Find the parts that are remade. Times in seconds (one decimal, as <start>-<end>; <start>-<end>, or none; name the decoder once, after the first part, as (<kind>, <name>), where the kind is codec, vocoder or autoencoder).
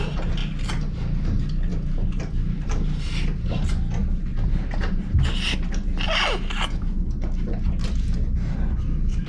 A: 1.7-2.3 (vocoder, BigVGAN v2); 4.3-5.2